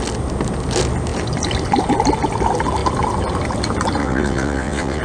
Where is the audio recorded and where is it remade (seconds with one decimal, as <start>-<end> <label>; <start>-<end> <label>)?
0.0-4.0 recorded; 4.0-5.0 remade